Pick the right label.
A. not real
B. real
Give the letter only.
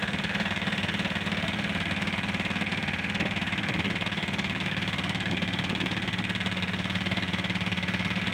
A